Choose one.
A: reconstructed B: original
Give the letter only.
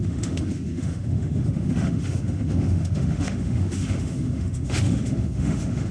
A